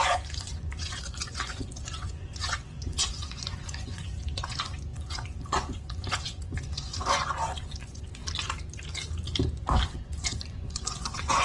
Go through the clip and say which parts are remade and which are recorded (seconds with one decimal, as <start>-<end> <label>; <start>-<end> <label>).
0.0-8.2 remade; 8.2-9.7 recorded; 9.7-11.4 remade